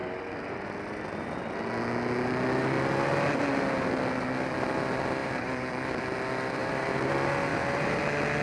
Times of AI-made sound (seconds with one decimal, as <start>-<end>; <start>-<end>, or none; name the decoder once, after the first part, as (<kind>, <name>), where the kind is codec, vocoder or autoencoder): 5.2-5.7 (vocoder, BigVGAN v2); 6.6-7.1; 7.5-8.0